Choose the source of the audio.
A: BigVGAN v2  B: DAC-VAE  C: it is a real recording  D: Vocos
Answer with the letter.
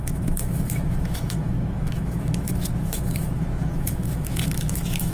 B